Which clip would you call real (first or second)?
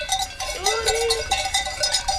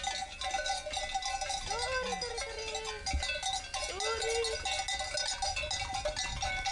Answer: second